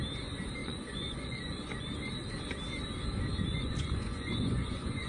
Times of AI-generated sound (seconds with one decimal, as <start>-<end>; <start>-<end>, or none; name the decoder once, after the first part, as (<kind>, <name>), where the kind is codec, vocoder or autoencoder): 0.6-1.9 (vocoder, Vocos); 3.5-5.1